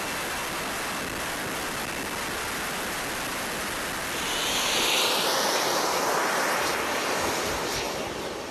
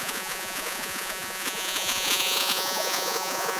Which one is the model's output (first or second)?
second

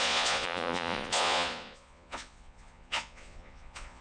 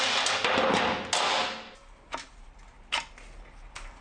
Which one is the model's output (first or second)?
first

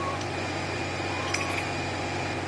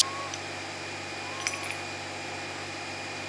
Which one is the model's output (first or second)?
first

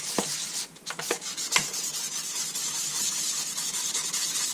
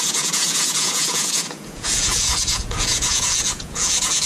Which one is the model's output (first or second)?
second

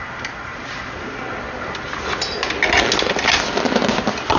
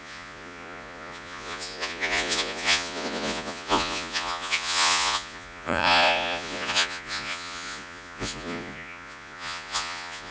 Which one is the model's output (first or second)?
second